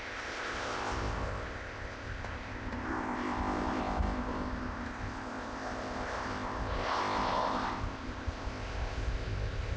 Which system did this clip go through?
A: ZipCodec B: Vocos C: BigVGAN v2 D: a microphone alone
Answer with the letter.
A